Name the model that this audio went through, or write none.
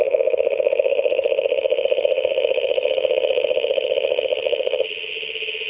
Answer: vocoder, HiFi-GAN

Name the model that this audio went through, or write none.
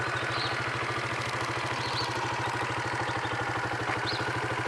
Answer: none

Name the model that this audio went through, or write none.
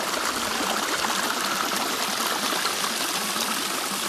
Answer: none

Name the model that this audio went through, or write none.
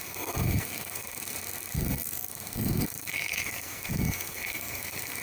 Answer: codec, SNAC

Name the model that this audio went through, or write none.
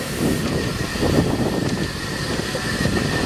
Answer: none